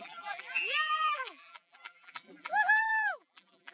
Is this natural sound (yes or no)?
no